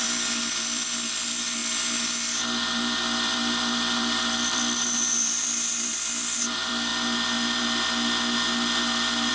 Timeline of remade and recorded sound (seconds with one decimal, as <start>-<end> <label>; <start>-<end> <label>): 0.0-1.6 remade; 1.6-2.4 recorded; 2.4-6.9 remade; 6.9-9.3 recorded